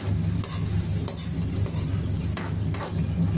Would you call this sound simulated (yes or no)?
no